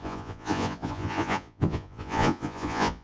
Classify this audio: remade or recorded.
remade